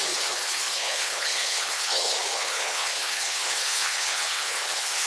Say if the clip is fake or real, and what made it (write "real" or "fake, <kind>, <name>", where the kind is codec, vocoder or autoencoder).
fake, codec, HILCodec